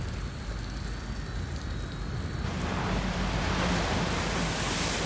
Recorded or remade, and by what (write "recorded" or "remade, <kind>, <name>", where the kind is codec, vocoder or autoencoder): recorded